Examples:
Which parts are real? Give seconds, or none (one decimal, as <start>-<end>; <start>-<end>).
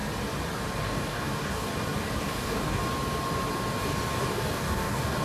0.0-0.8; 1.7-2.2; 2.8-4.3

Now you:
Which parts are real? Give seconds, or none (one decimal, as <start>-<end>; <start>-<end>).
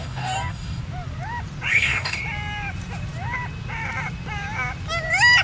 0.8-1.7; 2.2-5.4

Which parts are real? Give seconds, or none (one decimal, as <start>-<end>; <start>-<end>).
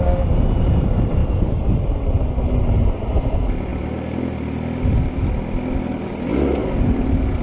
0.0-7.4